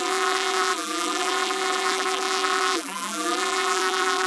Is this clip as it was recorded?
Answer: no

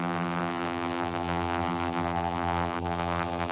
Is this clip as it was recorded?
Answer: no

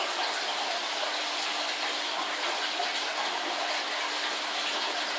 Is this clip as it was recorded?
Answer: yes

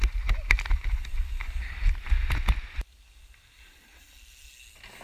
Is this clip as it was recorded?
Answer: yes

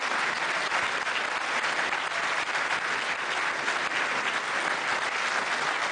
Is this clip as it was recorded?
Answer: yes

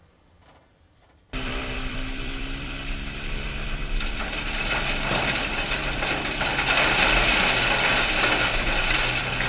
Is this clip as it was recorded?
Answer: no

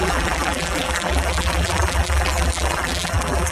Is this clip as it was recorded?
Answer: no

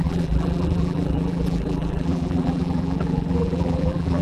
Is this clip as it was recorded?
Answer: no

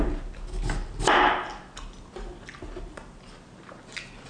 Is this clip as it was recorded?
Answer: yes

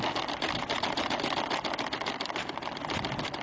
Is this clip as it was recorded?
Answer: yes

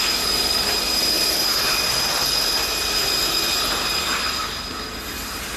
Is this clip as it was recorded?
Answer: yes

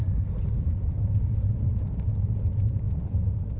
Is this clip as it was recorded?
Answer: yes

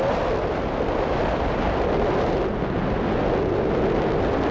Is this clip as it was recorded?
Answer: yes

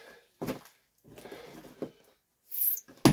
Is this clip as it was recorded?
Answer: yes